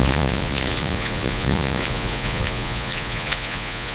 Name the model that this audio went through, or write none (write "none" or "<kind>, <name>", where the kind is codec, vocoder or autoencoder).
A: vocoder, Vocos